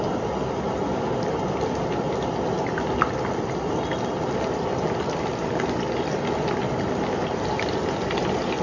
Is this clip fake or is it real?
real